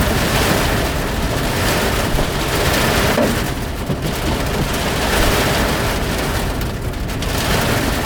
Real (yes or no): yes